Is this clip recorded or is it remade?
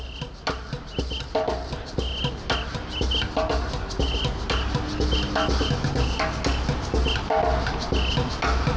recorded